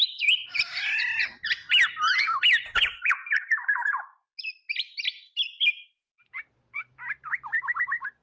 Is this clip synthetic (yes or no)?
no